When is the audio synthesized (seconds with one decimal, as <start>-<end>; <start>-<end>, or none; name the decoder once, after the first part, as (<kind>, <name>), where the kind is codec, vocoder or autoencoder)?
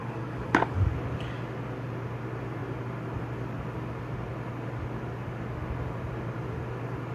0.0-0.9 (codec, DAC)